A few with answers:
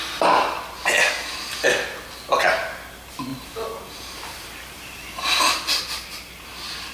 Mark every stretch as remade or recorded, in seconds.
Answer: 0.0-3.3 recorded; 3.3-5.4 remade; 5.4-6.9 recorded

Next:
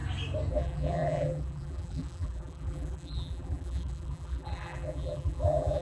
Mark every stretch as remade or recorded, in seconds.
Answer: 0.0-0.5 recorded; 0.5-5.8 remade